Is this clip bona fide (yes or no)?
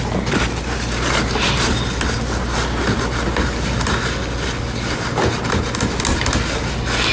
yes